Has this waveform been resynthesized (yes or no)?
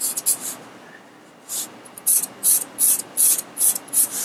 no